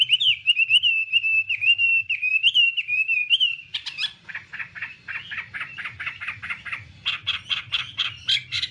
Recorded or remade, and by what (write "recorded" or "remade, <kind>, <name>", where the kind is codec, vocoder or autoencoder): recorded